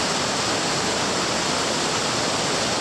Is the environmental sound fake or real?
real